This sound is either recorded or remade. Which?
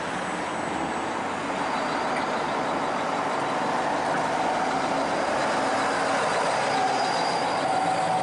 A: recorded